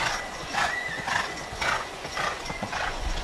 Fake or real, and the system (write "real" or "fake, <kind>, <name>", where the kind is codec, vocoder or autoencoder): fake, vocoder, Vocos